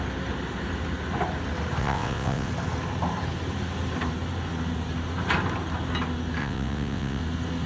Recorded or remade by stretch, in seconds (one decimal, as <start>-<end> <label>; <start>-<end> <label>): 0.0-1.8 recorded; 1.8-2.5 remade; 2.5-6.4 recorded; 6.4-7.2 remade; 7.2-7.7 recorded